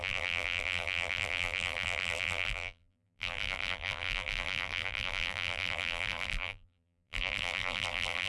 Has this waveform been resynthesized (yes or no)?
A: yes